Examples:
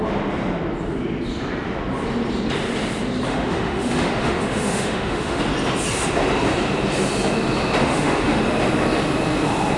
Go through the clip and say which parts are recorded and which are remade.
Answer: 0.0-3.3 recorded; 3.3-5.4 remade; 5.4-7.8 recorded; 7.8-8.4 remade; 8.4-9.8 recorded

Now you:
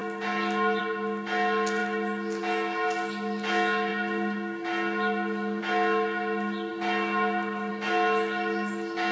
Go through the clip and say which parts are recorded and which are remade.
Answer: 0.0-9.1 recorded

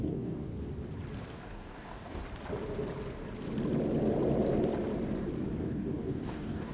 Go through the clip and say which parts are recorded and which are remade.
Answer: 0.0-0.5 remade; 0.5-1.3 recorded; 1.3-2.2 remade; 2.2-5.6 recorded; 5.6-6.7 remade

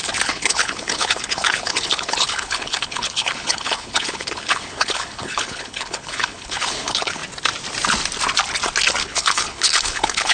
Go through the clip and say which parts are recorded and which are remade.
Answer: 0.0-7.2 remade; 7.2-9.0 recorded; 9.0-10.3 remade